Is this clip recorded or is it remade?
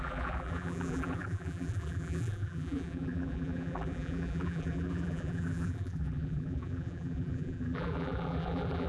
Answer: remade